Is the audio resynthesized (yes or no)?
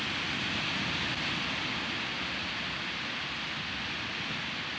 no